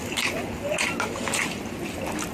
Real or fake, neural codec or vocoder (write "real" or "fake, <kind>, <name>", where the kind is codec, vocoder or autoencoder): real